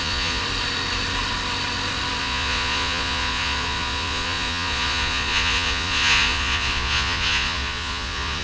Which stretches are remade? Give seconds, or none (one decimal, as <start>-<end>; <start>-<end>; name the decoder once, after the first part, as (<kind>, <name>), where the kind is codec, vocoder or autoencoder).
0.0-0.4 (vocoder, Vocos); 2.2-8.4